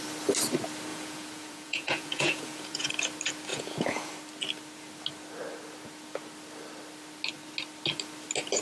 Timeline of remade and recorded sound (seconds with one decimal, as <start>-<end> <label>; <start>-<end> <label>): 0.0-0.9 recorded; 0.9-2.9 remade; 2.9-3.5 recorded; 3.5-4.1 remade; 4.1-8.6 recorded